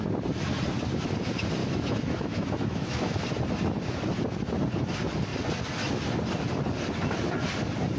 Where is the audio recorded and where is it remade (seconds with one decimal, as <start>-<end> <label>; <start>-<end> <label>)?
0.0-1.6 recorded; 1.6-3.2 remade; 3.2-8.0 recorded